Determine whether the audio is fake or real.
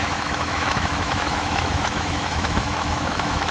fake